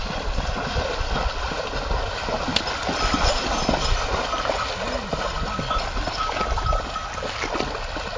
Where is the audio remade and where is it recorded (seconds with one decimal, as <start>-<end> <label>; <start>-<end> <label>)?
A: 0.0-8.2 recorded